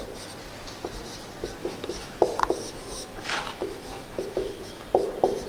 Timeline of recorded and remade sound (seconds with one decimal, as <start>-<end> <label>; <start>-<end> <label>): 0.0-1.6 recorded; 1.6-4.8 remade; 4.8-5.5 recorded